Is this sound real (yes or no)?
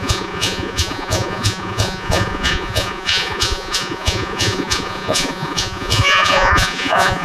no